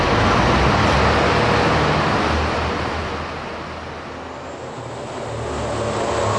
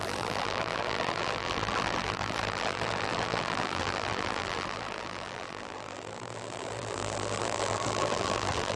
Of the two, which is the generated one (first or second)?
second